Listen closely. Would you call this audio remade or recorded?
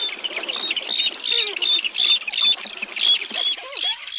recorded